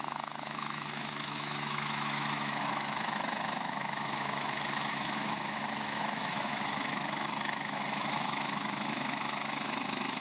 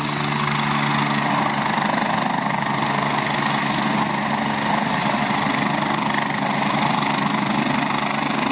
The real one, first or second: second